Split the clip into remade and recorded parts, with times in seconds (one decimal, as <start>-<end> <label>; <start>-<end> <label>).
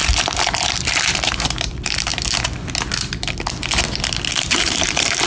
0.0-2.1 remade; 2.1-4.5 recorded; 4.5-5.3 remade